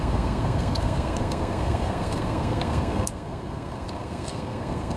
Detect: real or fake fake